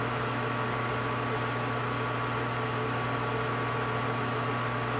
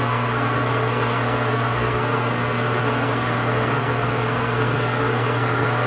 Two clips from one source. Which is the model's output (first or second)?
second